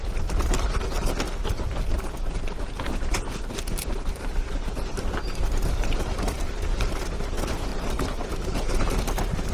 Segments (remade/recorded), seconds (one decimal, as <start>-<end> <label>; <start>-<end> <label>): 0.0-2.2 recorded; 2.2-6.9 remade; 6.9-7.7 recorded; 7.7-9.0 remade; 9.0-9.5 recorded